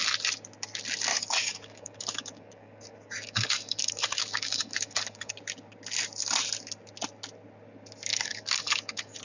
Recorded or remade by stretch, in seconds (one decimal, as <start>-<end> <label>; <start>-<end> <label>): 0.0-1.1 recorded; 1.1-5.3 remade; 5.3-8.1 recorded; 8.1-9.2 remade